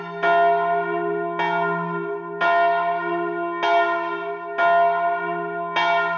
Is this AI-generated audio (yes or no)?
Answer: no